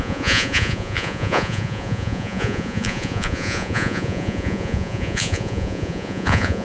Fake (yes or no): yes